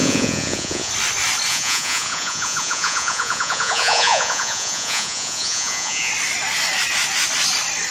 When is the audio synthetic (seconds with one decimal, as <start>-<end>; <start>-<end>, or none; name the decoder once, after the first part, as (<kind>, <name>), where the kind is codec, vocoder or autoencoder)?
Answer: 0.0-0.9 (vocoder, Vocos); 1.5-6.1